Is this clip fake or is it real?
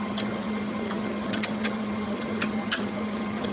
fake